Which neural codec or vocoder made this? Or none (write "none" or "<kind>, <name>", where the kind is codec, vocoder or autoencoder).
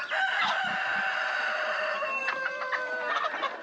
none